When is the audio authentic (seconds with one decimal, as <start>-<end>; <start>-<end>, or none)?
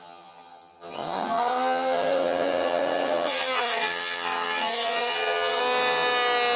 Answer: 5.6-6.6